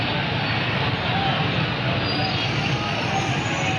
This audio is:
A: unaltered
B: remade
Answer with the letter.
A